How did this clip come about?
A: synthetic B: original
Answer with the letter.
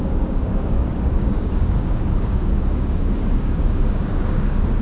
A